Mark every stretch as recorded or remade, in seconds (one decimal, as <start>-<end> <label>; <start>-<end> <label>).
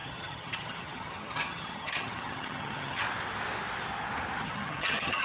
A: 0.0-3.0 remade; 3.0-4.4 recorded; 4.4-5.2 remade